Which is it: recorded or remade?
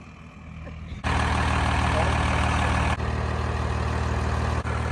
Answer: recorded